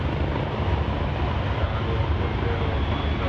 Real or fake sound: real